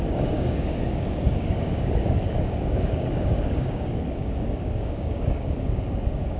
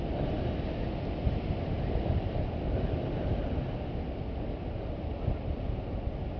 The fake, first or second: first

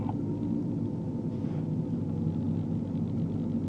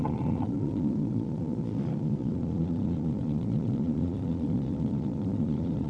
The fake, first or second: second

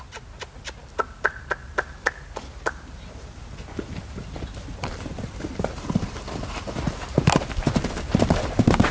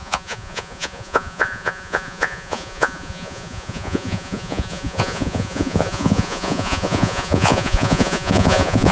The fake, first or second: second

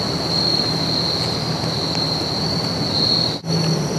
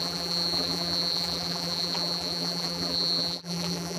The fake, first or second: second